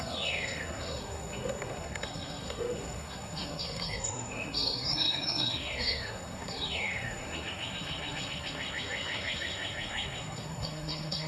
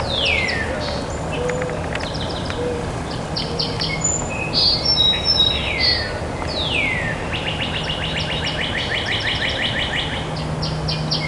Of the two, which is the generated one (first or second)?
first